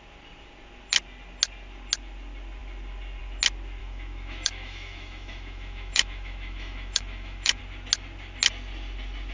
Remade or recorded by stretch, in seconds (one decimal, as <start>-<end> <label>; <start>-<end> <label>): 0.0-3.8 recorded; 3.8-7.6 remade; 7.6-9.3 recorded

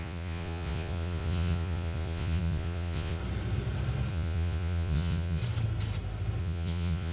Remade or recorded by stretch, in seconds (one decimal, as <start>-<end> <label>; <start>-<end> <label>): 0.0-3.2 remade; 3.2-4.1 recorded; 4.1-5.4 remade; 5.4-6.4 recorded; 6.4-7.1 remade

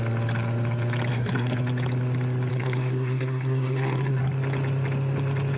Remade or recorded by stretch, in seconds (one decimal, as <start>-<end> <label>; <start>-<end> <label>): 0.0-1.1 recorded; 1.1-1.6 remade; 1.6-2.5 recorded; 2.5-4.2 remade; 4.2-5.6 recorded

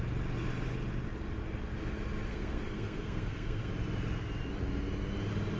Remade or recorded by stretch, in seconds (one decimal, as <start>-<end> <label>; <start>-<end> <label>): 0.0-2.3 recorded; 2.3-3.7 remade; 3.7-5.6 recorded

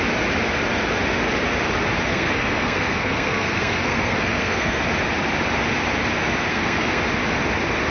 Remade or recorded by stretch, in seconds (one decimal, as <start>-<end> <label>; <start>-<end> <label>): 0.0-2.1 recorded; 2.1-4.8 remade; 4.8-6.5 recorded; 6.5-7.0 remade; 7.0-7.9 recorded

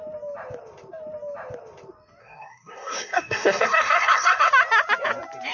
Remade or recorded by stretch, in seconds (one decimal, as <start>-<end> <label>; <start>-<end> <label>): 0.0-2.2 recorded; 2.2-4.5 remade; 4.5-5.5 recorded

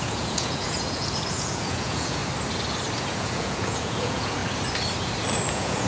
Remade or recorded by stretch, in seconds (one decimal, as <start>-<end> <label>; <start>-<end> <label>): 0.0-2.2 remade; 2.2-3.0 recorded; 3.0-4.4 remade; 4.4-5.5 recorded; 5.5-5.9 remade